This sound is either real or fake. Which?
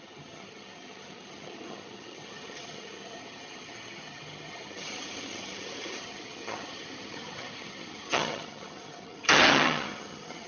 fake